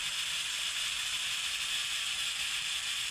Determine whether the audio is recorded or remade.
recorded